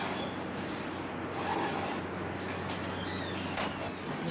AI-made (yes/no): no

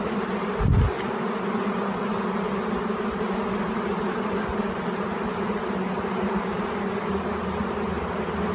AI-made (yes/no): no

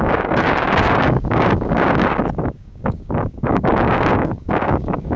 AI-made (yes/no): yes